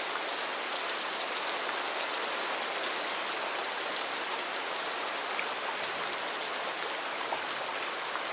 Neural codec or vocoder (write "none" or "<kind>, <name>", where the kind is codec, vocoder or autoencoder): none